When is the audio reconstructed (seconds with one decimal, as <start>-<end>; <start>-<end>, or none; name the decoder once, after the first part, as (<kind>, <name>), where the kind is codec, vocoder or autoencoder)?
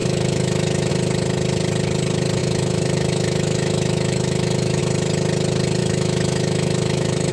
0.0-0.9 (autoencoder, DAC-VAE); 2.4-4.8; 5.8-7.3